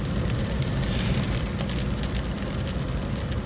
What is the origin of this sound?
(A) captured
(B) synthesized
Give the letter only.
A